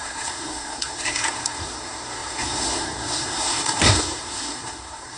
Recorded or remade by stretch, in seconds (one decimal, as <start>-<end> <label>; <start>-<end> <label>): 0.0-5.2 remade